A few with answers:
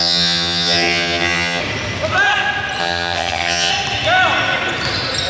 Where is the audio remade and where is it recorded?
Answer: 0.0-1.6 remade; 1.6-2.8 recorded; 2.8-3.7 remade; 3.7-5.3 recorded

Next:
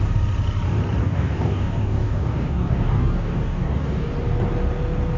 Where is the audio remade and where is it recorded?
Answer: 0.0-1.0 recorded; 1.0-4.1 remade; 4.1-5.2 recorded

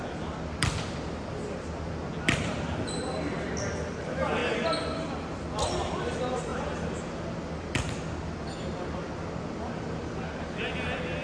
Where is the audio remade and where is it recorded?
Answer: 0.0-11.2 recorded

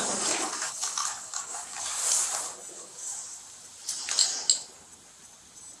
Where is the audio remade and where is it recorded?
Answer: 0.0-2.0 remade; 2.0-2.7 recorded; 2.7-3.2 remade; 3.2-5.8 recorded

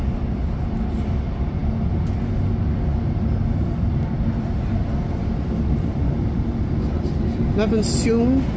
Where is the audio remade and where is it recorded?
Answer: 0.0-8.6 recorded

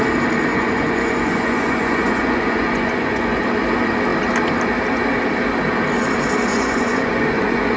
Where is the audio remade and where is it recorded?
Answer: 0.0-0.5 recorded; 0.5-3.4 remade; 3.4-6.5 recorded; 6.5-7.8 remade

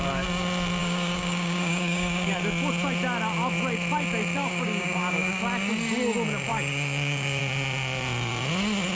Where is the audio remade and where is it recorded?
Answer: 0.0-0.8 recorded; 0.8-2.3 remade; 2.3-4.4 recorded; 4.4-5.4 remade; 5.4-6.5 recorded; 6.5-7.4 remade; 7.4-8.9 recorded